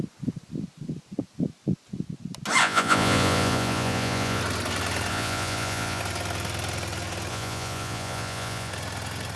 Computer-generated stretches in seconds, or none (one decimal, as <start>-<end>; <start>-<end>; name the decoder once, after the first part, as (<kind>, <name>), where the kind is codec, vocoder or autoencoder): 2.6-4.4 (vocoder, Vocos); 5.1-6.0; 7.3-8.7